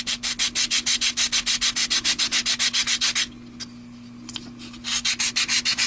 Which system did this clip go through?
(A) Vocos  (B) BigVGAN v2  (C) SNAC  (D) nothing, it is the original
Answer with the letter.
D